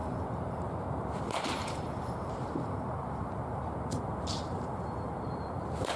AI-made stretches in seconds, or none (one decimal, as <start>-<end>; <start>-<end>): 0.0-6.0